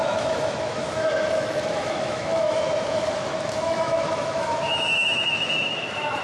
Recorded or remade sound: remade